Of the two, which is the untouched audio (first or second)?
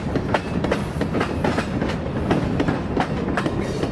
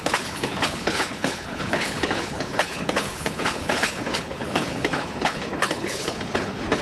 first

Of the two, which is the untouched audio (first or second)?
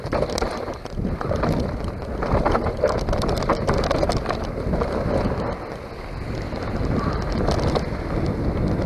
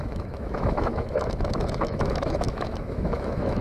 first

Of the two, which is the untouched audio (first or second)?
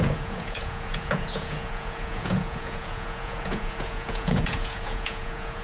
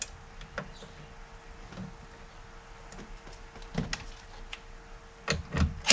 second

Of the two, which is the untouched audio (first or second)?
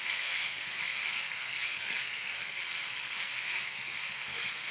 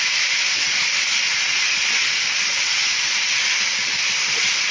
second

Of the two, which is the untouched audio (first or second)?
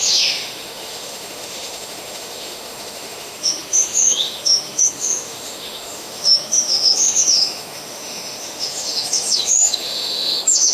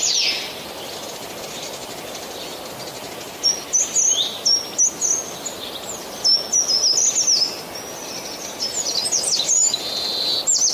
second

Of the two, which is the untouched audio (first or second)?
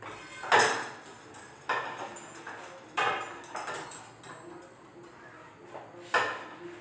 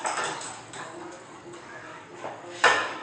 first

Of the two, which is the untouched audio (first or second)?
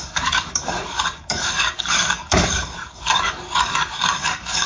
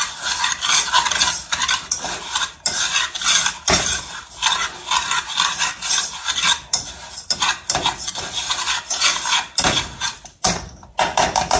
second